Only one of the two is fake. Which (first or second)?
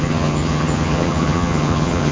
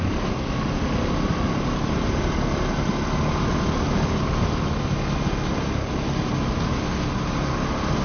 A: first